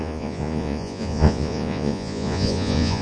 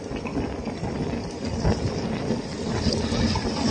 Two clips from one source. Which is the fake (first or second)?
first